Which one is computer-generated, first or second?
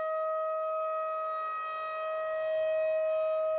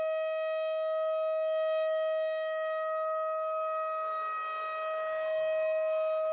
second